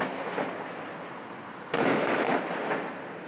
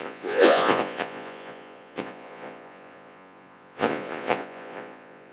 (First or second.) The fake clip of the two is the second